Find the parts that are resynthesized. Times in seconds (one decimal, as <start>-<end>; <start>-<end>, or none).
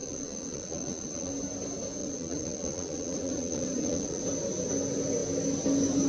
0.0-1.3; 2.0-4.2